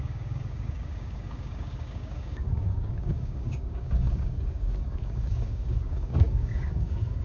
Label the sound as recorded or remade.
remade